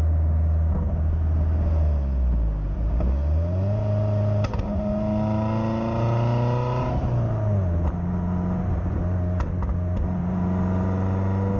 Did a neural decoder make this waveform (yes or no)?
no